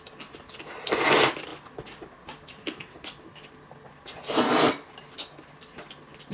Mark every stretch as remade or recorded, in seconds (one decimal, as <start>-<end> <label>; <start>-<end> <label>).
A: 0.0-6.3 recorded